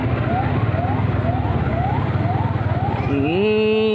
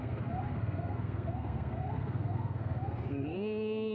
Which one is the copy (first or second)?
second